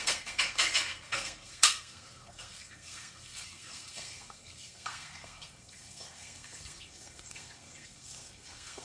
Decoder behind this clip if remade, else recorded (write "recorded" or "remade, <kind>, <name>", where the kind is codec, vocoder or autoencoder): remade, codec, SNAC